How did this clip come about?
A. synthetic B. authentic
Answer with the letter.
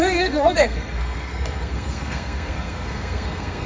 A